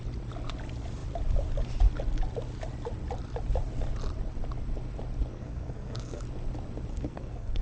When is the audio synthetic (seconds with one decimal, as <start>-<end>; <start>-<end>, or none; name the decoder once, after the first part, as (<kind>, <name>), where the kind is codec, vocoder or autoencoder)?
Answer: 5.3-6.2 (codec, SNAC); 6.9-7.6